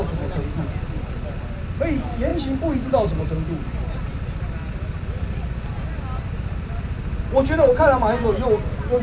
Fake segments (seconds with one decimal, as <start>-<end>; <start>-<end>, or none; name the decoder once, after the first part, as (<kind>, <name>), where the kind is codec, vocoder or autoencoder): none